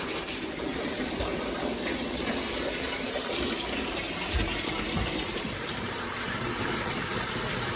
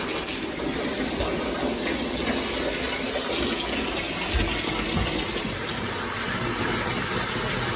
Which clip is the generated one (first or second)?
first